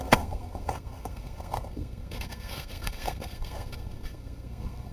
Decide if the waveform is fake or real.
fake